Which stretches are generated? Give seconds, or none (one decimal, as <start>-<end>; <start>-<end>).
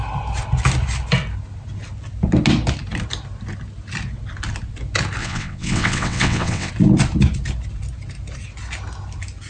5.2-6.7